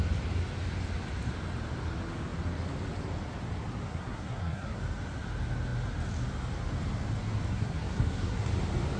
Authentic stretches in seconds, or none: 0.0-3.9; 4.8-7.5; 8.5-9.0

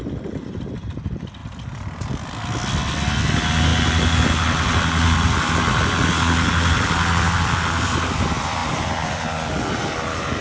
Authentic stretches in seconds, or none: 0.0-10.4

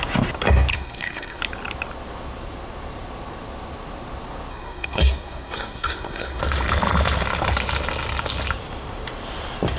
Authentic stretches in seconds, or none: 0.0-0.7; 1.4-4.5; 6.4-9.8

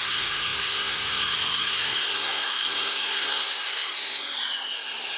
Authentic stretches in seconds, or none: none

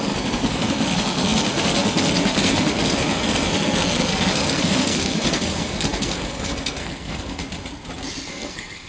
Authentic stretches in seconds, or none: 7.4-8.3